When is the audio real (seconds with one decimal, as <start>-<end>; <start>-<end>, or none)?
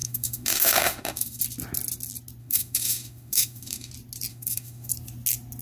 1.4-2.4; 3.9-4.3; 4.9-5.6